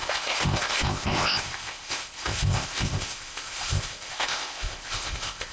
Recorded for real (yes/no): no